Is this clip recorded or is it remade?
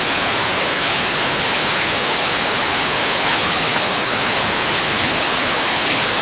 remade